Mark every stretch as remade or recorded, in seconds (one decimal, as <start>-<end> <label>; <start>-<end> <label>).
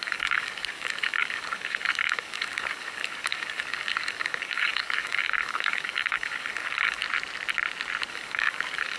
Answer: 0.0-7.0 remade; 7.0-8.1 recorded; 8.1-9.0 remade